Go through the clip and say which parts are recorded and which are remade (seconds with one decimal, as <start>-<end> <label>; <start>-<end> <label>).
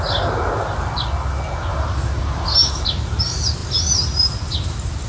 0.0-1.7 recorded; 1.7-2.7 remade; 2.7-5.1 recorded